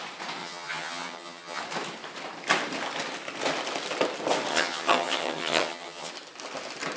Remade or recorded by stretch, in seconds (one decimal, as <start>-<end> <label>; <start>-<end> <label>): 0.0-0.4 recorded; 0.4-1.6 remade; 1.6-4.5 recorded; 4.5-6.1 remade; 6.1-7.0 recorded